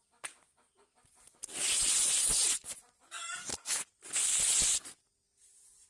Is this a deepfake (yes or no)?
no